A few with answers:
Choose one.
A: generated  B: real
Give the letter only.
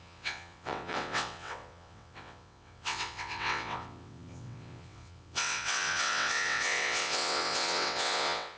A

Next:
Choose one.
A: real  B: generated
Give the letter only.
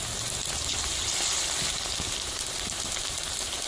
A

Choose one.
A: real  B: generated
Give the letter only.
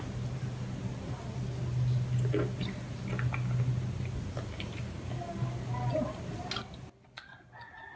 A